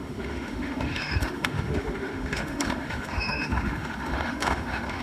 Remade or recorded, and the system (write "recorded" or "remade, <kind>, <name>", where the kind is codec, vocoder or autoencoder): remade, autoencoder, DAC-VAE